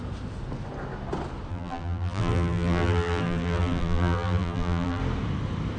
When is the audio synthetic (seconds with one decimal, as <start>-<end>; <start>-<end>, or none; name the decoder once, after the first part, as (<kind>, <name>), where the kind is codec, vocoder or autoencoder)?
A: 1.5-5.0 (vocoder, BigVGAN v2)